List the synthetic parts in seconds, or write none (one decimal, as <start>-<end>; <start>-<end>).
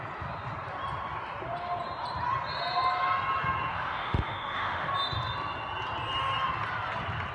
3.7-4.9